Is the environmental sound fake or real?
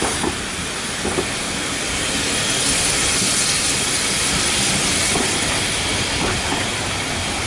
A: real